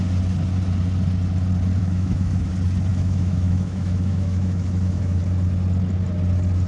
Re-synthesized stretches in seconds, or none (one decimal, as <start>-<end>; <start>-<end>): 1.8-2.5; 2.9-5.2